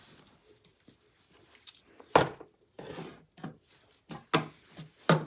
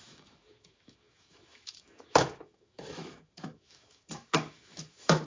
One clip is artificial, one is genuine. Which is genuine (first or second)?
first